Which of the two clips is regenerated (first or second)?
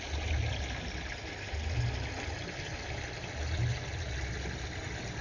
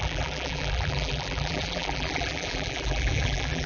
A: second